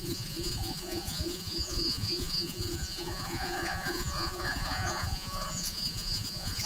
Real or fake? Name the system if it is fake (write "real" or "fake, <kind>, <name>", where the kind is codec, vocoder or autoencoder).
fake, vocoder, Vocos